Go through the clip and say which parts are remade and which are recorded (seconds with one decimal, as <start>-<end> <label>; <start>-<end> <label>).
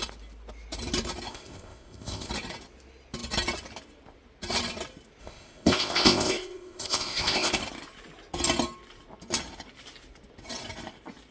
0.0-1.3 recorded; 1.3-2.3 remade; 2.3-5.2 recorded; 5.2-7.6 remade; 7.6-11.3 recorded